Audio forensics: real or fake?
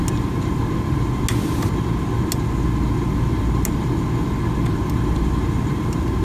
real